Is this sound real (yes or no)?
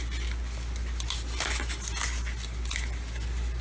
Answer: yes